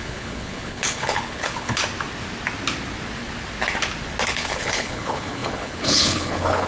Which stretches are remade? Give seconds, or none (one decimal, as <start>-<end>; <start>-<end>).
0.0-1.8; 4.3-6.7